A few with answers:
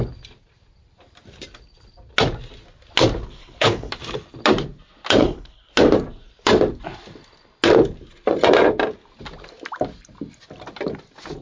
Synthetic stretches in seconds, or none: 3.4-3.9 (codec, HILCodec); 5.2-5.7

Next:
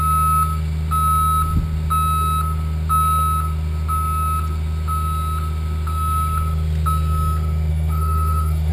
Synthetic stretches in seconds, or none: 7.7-8.7 (autoencoder, DAC-VAE)

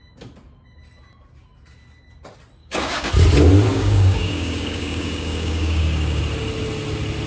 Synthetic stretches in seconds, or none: 2.6-3.1 (codec, DAC); 3.7-6.2

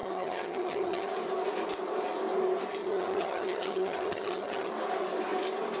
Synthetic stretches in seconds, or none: 0.0-1.1 (vocoder, HiFi-GAN); 2.8-4.7

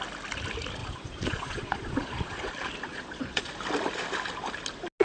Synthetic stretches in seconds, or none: 0.8-2.5 (vocoder, Vocos); 2.9-3.5